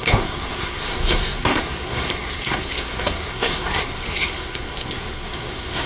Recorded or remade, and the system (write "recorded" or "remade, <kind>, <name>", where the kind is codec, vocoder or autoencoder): remade, codec, SNAC